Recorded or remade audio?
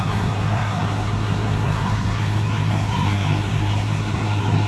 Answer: remade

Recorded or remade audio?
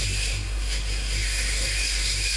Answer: remade